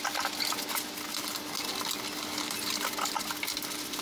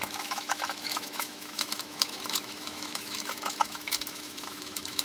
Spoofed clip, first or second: second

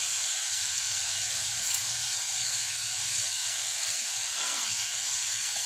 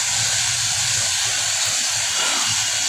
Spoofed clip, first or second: first